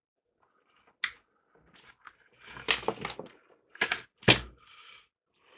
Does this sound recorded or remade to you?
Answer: recorded